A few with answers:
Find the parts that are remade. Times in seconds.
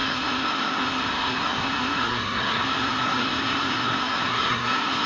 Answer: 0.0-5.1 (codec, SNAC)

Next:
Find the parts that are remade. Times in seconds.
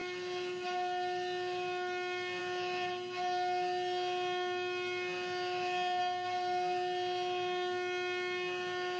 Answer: none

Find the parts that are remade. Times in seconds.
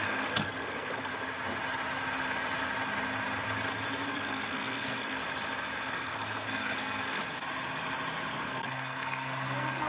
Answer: 0.0-1.1 (codec, SNAC); 4.1-5.2; 5.9-7.2; 8.3-9.9